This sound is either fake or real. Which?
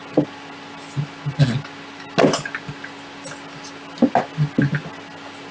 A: real